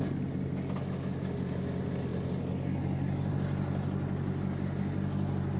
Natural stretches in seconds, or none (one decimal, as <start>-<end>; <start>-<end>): 0.0-5.6

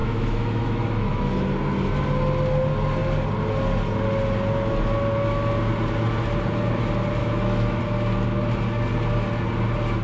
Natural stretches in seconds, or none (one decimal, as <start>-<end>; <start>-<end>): 1.3-7.2; 7.8-10.0

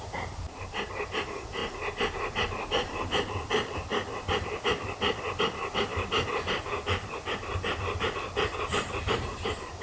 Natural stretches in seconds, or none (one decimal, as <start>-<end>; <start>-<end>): 1.6-2.6; 3.9-5.4; 5.9-8.7

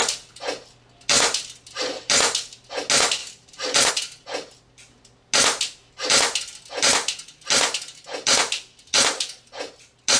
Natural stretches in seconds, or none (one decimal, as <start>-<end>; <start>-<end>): 0.0-3.2; 3.9-10.2

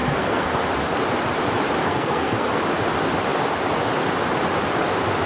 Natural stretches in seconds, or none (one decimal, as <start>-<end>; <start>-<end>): 0.6-1.8; 2.6-5.3

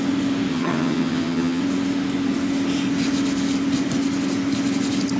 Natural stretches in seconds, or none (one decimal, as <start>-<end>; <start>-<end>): 0.0-0.5; 1.6-5.2